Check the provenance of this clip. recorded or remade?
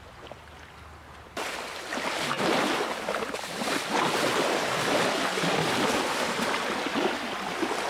recorded